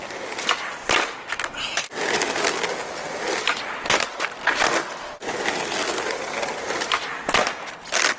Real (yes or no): yes